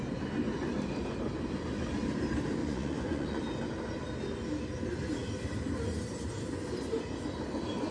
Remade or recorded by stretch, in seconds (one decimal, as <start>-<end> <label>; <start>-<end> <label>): 0.0-2.6 recorded; 2.6-3.4 remade; 3.4-7.9 recorded